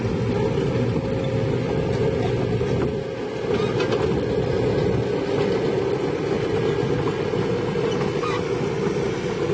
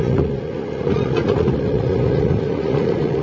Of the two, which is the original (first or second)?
first